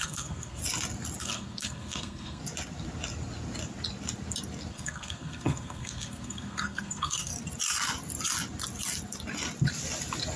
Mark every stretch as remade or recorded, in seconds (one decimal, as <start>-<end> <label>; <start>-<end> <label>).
0.0-0.6 remade; 0.6-1.2 recorded; 1.2-2.4 remade; 2.4-4.7 recorded; 4.7-7.3 remade; 7.3-10.4 recorded